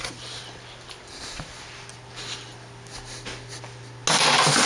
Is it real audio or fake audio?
real